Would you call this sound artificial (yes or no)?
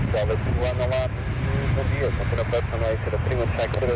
no